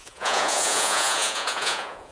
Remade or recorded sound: remade